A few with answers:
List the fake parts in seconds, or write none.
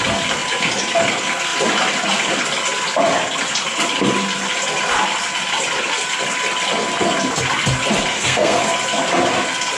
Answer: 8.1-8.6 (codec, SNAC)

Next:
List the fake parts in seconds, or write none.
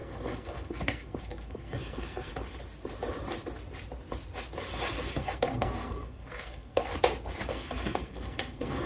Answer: 0.0-2.3 (codec, SNAC); 4.9-6.9; 7.5-8.9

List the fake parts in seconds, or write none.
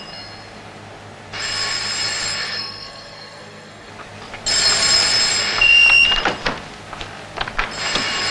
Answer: 2.4-3.9 (codec, SNAC)